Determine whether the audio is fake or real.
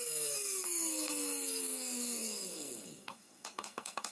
fake